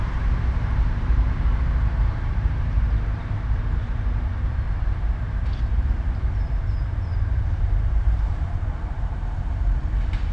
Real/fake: fake